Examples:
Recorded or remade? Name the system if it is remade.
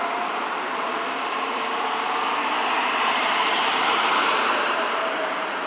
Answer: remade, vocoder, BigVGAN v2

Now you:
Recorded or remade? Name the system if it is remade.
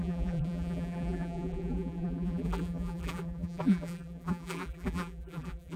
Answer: remade, vocoder, BigVGAN v2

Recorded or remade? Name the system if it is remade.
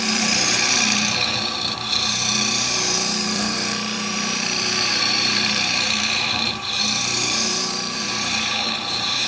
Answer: remade, vocoder, BigVGAN v2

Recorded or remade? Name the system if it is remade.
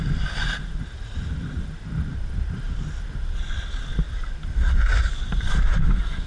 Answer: recorded